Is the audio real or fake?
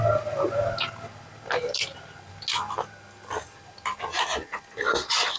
real